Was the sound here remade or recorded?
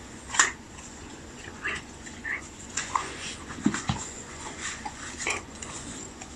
remade